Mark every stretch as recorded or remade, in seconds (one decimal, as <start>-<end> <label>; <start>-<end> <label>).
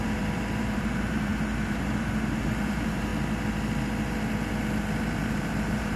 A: 0.0-3.1 remade; 3.1-5.3 recorded; 5.3-6.0 remade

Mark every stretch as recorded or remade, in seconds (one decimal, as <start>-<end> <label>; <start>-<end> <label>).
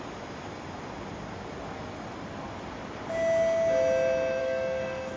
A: 0.0-4.4 recorded; 4.4-5.2 remade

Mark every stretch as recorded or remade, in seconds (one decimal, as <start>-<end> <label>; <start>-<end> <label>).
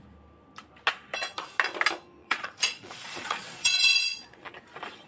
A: 0.0-2.2 recorded; 2.2-4.5 remade; 4.5-5.1 recorded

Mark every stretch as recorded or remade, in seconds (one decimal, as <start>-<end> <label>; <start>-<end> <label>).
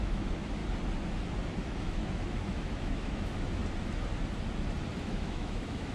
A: 0.0-0.6 remade; 0.6-1.8 recorded; 1.8-3.6 remade; 3.6-5.0 recorded; 5.0-5.9 remade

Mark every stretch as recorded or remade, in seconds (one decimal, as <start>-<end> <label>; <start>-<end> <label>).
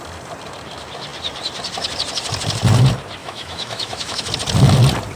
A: 0.0-3.2 recorded; 3.2-4.3 remade; 4.3-5.2 recorded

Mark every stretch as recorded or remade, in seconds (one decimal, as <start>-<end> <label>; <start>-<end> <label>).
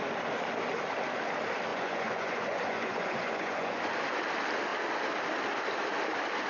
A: 0.0-1.7 recorded; 1.7-3.8 remade; 3.8-6.5 recorded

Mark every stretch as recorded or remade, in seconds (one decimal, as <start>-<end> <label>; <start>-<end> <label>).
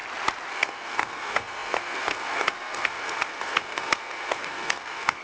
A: 0.0-0.5 recorded; 0.5-5.2 remade